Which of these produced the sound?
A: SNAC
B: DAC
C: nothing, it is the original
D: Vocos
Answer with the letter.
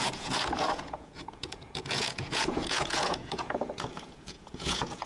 D